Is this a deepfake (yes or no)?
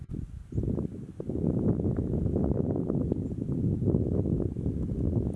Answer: no